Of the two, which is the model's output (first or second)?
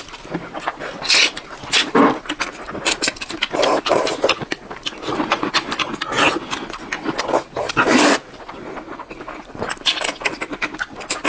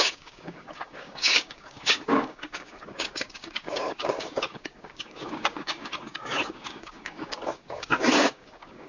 second